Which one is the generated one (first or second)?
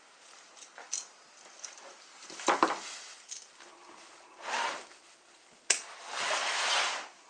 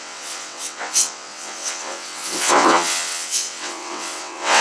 second